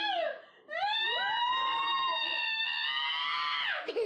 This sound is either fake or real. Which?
real